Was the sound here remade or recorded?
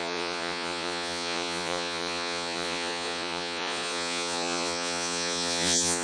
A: remade